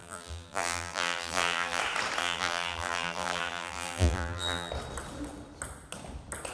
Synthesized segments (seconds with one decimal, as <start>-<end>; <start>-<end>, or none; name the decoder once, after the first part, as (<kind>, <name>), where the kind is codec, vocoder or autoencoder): 0.0-1.8 (vocoder, BigVGAN v2); 2.2-4.7

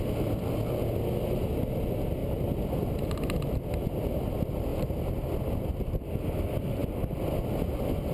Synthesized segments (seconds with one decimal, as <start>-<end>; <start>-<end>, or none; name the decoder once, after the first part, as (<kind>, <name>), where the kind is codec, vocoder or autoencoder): 2.2-2.9 (vocoder, BigVGAN v2); 4.7-5.3

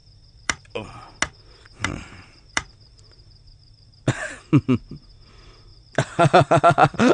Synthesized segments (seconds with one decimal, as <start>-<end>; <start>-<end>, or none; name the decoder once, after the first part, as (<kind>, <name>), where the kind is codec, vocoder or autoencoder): 0.0-1.0 (vocoder, BigVGAN v2); 1.8-4.8; 5.7-6.6

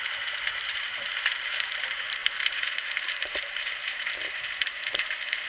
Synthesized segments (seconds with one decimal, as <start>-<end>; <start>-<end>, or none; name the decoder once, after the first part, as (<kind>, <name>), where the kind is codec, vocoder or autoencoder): 0.0-5.5 (vocoder, BigVGAN v2)

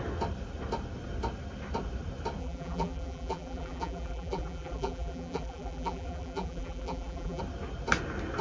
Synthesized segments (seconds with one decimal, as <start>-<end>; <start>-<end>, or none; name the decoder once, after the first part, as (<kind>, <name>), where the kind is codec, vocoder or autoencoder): 2.4-7.4 (vocoder, BigVGAN v2)

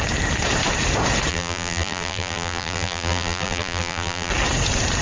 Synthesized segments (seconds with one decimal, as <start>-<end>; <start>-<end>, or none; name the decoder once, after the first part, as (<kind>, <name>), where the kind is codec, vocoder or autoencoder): 1.3-4.3 (vocoder, BigVGAN v2)